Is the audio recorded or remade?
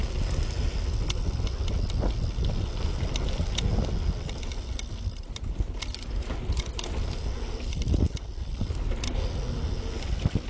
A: recorded